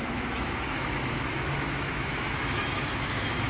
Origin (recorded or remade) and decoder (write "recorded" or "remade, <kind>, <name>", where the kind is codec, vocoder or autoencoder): remade, autoencoder, DAC-VAE